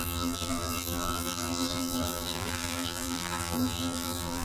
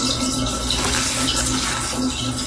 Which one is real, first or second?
second